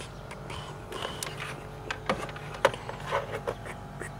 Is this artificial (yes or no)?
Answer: no